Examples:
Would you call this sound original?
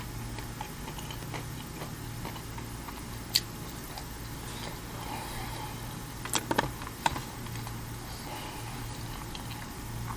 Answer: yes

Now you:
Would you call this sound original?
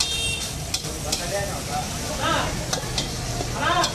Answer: yes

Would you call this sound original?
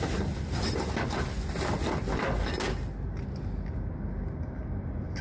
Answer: yes